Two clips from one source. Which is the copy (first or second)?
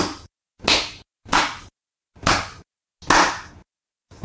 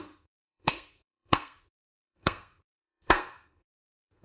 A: second